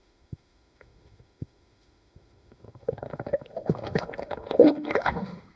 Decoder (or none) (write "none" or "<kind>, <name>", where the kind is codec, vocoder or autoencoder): autoencoder, DAC-VAE